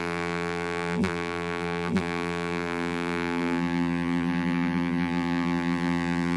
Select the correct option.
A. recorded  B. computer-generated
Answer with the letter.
B